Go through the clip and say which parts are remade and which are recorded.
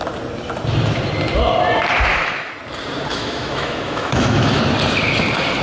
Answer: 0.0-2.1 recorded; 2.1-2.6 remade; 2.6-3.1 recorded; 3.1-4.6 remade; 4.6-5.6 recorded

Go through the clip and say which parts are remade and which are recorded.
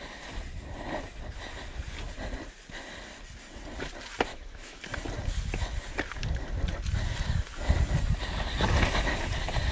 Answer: 0.0-4.3 recorded; 4.3-4.8 remade; 4.8-9.7 recorded